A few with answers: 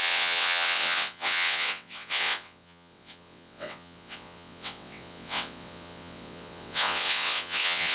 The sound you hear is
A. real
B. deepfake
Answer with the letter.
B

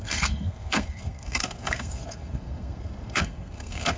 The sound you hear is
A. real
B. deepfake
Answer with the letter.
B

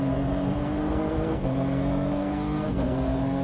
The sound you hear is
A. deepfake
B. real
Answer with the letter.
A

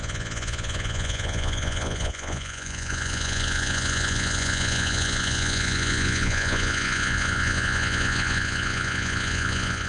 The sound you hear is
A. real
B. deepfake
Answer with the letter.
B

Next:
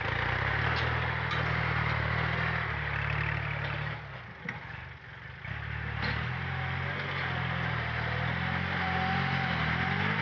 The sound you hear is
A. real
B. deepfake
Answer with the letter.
A